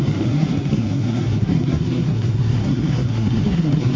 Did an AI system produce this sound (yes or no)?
yes